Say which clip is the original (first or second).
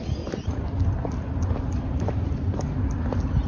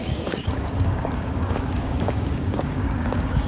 first